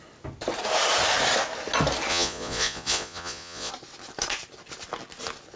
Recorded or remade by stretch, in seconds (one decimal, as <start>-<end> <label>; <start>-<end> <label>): 0.0-2.1 recorded; 2.1-3.7 remade; 3.7-5.6 recorded